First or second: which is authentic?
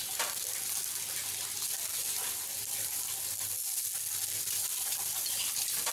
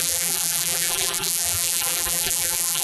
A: first